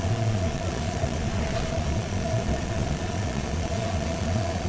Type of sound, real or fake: fake